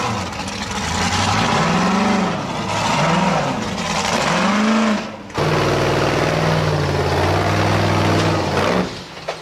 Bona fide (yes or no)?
yes